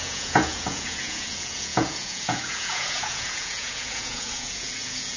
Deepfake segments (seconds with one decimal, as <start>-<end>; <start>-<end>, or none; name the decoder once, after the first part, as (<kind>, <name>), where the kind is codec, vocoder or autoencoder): 0.0-5.2 (vocoder, Vocos)